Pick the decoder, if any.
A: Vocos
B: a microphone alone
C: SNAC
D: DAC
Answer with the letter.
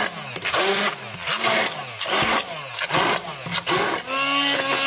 B